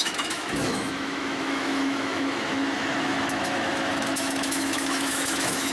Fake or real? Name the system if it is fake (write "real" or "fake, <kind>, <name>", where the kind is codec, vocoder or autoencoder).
fake, autoencoder, DAC-VAE